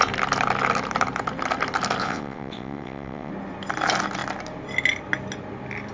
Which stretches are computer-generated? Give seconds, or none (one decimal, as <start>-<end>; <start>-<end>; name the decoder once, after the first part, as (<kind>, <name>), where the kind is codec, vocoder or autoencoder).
2.0-3.3 (vocoder, WaveNeXt)